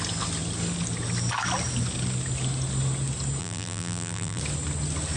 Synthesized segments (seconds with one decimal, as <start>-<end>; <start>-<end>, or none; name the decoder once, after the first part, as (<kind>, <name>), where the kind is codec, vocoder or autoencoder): 3.4-4.4 (vocoder, BigVGAN v2)